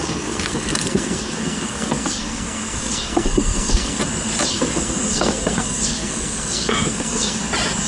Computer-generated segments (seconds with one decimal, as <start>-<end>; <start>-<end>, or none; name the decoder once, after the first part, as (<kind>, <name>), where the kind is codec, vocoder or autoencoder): 0.0-4.0 (codec, SNAC); 4.5-7.4